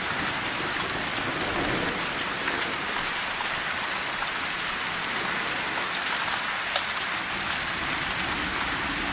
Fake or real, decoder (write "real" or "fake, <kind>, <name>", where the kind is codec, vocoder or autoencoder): real